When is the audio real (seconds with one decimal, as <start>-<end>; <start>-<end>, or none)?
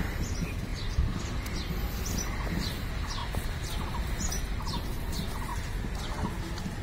0.0-6.8